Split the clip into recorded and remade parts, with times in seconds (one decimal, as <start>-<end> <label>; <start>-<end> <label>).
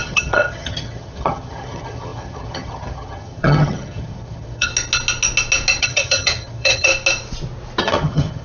0.0-4.7 remade; 4.7-5.8 recorded; 5.8-6.9 remade; 6.9-7.8 recorded; 7.8-8.4 remade